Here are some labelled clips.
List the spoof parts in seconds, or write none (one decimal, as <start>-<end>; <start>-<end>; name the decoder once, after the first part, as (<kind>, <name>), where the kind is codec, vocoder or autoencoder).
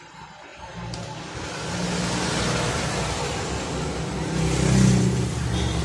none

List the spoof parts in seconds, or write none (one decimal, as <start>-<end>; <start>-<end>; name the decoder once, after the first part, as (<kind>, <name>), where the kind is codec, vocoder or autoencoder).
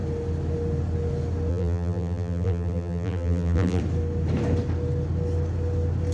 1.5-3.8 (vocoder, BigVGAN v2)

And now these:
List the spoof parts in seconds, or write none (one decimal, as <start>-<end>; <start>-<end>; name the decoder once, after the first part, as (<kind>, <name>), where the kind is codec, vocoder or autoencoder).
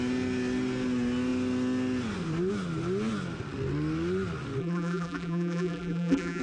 4.6-6.4 (vocoder, BigVGAN v2)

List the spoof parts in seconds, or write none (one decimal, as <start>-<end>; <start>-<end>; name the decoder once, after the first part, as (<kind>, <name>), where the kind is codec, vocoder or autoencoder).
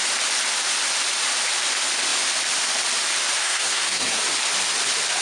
3.4-4.2 (codec, SNAC)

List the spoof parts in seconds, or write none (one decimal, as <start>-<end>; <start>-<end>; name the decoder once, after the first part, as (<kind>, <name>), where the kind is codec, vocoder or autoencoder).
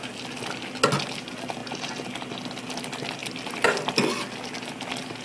3.2-3.9 (vocoder, BigVGAN v2)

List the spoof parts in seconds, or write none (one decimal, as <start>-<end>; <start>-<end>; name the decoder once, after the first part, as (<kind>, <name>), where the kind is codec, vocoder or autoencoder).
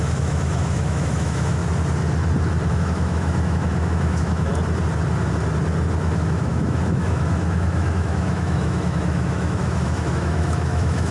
0.0-1.6 (autoencoder, DAC-VAE); 2.7-4.5; 6.0-11.1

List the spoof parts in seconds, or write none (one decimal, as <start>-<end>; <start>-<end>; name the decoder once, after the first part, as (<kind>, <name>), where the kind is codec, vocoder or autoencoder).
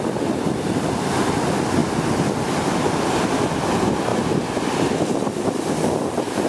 0.0-1.8 (vocoder, BigVGAN v2); 3.2-4.1; 5.0-6.5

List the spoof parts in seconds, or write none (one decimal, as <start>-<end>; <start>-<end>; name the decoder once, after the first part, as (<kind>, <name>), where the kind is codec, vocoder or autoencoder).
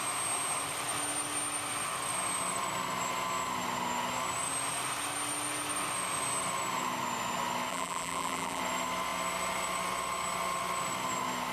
7.7-8.6 (vocoder, BigVGAN v2)